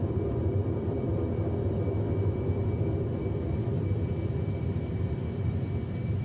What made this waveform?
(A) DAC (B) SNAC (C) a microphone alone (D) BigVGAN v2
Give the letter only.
D